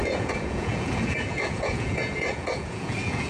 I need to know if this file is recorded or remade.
remade